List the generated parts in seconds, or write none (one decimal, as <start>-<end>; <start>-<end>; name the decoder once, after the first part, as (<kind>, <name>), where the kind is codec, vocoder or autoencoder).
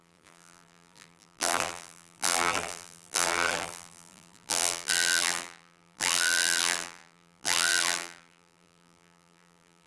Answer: 0.0-9.9 (vocoder, BigVGAN v2)